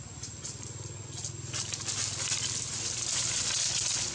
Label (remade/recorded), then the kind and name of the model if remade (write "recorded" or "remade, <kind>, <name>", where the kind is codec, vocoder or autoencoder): recorded